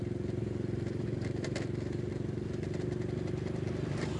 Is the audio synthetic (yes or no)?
no